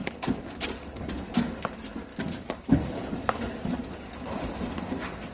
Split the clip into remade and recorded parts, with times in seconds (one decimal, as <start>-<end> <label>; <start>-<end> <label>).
0.0-1.1 remade; 1.1-2.1 recorded; 2.1-3.9 remade; 3.9-5.3 recorded